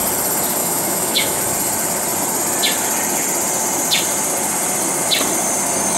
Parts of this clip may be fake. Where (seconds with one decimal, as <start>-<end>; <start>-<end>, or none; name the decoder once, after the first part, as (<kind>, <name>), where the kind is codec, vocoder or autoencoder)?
0.6-1.4 (autoencoder, DAC-VAE)